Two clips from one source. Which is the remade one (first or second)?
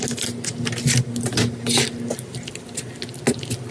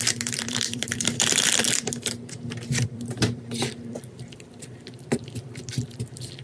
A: second